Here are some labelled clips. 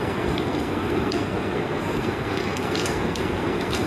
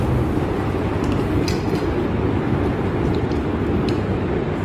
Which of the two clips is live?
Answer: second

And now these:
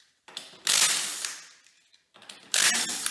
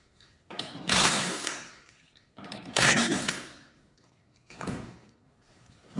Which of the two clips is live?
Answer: first